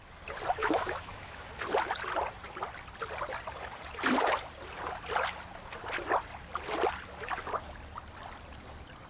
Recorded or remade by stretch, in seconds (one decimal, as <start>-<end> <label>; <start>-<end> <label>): 0.0-0.6 recorded; 0.6-1.4 remade; 1.4-9.1 recorded